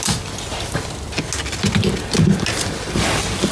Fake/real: real